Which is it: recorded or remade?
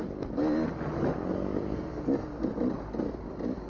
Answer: recorded